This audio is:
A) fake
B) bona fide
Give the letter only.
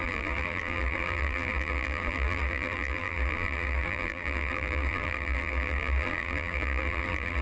A